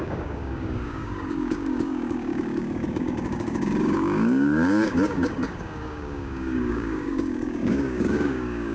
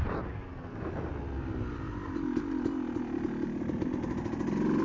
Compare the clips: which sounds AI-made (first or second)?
first